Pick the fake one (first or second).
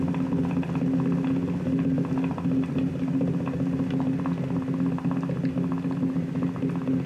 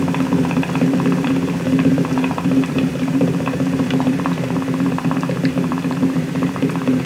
second